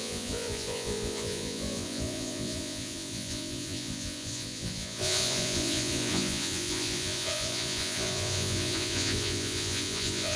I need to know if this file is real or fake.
fake